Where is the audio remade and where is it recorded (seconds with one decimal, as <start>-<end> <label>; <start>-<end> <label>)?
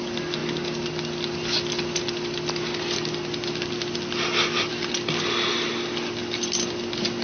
0.0-7.2 recorded